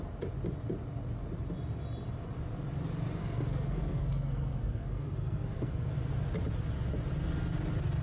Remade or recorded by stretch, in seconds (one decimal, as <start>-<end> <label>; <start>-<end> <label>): 0.0-3.2 recorded; 3.2-5.9 remade; 5.9-8.0 recorded